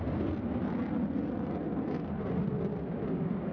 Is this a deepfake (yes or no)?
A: no